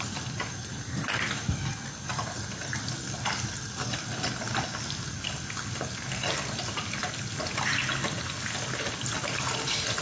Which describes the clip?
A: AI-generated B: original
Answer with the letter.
B